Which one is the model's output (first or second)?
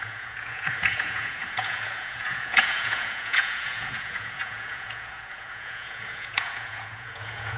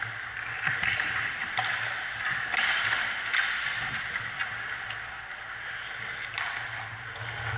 first